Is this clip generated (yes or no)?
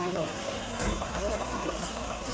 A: yes